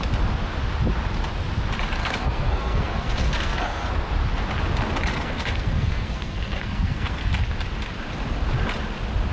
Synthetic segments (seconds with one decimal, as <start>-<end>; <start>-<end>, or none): 2.0-4.1; 5.1-7.3